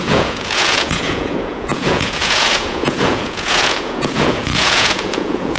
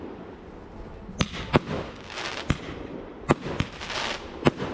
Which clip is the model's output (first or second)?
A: first